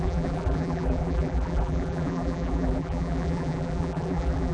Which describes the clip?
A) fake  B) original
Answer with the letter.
A